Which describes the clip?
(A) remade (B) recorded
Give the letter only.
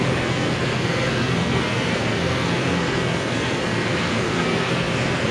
A